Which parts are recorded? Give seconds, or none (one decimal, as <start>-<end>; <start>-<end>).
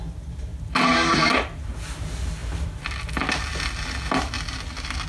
0.0-5.1